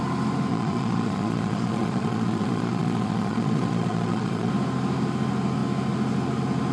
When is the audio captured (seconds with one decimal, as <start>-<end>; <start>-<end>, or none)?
0.0-0.5; 4.5-6.7